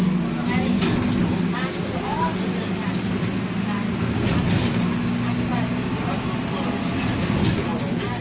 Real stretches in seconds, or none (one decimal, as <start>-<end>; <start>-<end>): 0.0-8.2